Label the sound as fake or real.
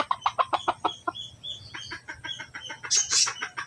real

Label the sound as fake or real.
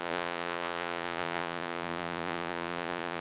fake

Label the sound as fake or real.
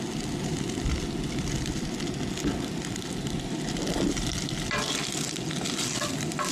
real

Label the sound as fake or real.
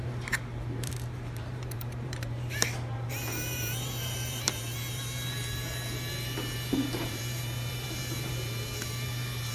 fake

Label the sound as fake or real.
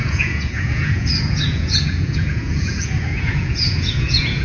fake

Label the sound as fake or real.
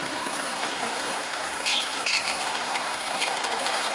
fake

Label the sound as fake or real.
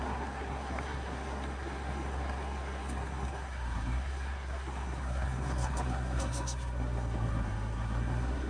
fake